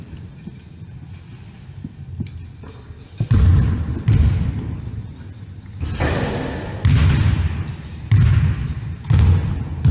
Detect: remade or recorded recorded